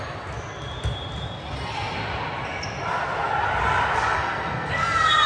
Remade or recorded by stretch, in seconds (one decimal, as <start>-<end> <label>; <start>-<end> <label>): 0.0-4.1 recorded; 4.1-4.7 remade; 4.7-5.3 recorded